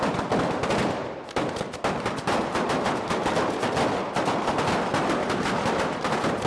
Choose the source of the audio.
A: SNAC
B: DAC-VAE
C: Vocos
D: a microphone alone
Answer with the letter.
D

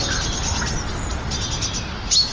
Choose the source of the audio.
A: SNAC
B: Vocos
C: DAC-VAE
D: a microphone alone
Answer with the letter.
D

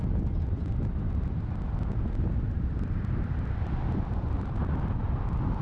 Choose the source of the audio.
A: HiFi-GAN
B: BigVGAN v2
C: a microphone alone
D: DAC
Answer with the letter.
C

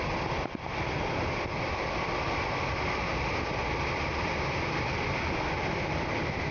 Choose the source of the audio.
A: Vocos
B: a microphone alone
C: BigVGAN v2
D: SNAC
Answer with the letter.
B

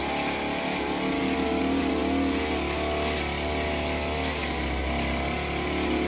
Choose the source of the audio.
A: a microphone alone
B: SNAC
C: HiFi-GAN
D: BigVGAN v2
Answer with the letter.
A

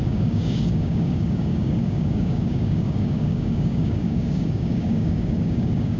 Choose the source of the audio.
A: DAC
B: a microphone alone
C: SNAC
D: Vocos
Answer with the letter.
A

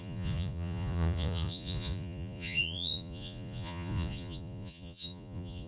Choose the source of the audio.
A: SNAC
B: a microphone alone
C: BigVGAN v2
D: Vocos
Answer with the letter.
D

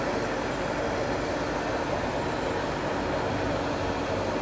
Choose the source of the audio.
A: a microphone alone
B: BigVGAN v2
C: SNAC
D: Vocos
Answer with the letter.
A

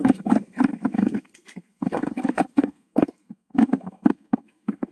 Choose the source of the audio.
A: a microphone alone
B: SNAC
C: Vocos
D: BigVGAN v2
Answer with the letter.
B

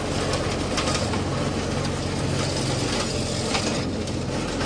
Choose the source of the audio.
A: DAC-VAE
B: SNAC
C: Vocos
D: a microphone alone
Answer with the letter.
D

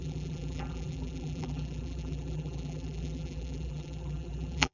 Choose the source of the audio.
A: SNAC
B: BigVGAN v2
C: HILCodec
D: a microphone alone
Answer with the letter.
B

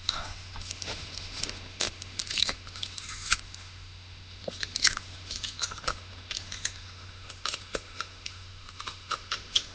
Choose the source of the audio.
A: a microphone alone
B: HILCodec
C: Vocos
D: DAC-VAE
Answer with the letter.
D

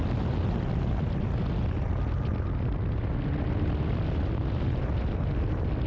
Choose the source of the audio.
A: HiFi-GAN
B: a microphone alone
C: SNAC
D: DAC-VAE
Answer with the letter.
B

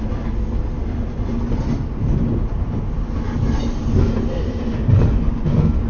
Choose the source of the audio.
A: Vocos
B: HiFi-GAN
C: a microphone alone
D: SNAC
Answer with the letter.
C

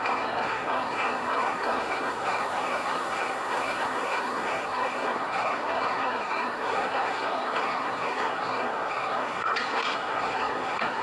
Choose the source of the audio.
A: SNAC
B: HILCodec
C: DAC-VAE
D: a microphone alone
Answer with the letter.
A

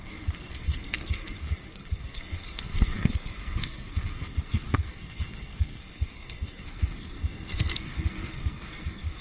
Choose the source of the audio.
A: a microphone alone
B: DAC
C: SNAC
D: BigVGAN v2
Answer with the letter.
C